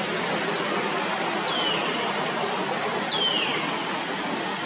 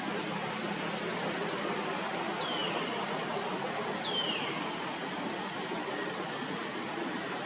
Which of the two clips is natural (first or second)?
first